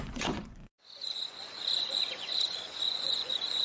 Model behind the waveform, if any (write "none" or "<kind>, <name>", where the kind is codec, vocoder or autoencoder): vocoder, Vocos